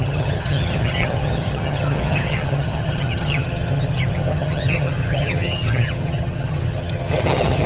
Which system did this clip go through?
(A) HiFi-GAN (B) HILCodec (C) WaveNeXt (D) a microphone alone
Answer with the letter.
A